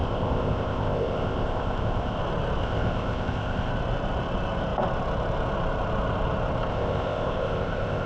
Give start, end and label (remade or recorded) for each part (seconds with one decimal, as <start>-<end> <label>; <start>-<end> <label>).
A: 0.0-2.2 remade; 2.2-2.6 recorded; 2.6-3.7 remade; 3.7-6.7 recorded; 6.7-8.1 remade